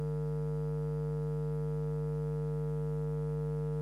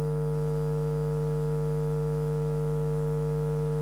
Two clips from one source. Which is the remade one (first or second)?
second